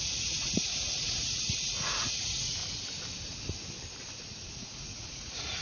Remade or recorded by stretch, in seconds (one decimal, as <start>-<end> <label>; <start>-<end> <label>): 0.0-2.6 remade; 2.6-4.5 recorded; 4.5-5.6 remade